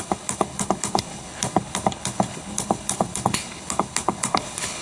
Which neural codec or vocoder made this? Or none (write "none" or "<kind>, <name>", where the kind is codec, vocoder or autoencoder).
codec, HILCodec